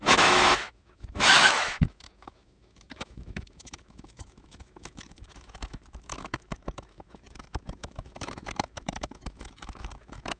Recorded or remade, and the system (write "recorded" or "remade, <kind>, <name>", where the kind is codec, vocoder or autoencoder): remade, autoencoder, DAC-VAE